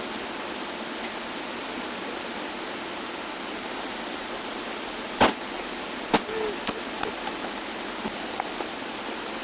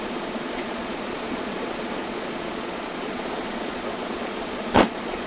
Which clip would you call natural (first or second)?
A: first